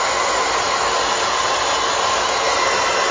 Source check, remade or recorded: recorded